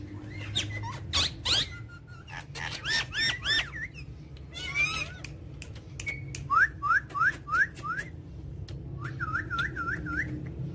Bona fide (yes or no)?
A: yes